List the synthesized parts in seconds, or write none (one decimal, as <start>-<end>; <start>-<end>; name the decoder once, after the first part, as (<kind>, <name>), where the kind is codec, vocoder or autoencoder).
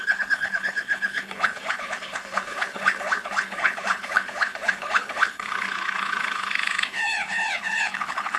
0.0-8.4 (codec, HILCodec)